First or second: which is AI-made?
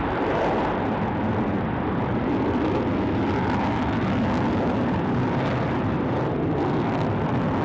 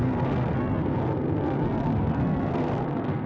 second